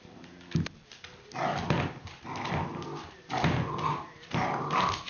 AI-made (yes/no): no